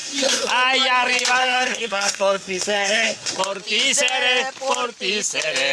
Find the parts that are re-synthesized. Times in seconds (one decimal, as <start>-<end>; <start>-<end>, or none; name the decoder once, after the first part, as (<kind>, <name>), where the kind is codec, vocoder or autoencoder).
0.0-0.5 (codec, SNAC); 1.4-3.4